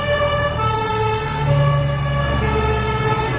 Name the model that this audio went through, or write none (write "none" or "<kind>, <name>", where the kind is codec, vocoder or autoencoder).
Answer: none